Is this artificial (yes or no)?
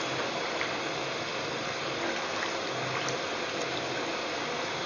no